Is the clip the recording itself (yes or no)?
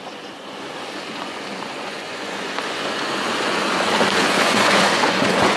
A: no